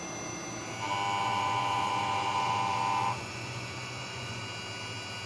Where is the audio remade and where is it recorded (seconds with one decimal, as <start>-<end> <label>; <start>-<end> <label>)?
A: 0.0-1.2 recorded; 1.2-4.4 remade; 4.4-5.3 recorded